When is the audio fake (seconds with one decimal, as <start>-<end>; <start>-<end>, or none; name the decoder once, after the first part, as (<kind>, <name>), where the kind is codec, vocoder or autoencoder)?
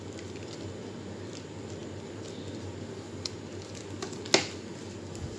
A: none